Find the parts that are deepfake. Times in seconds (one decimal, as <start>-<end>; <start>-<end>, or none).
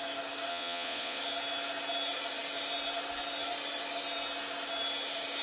0.5-1.2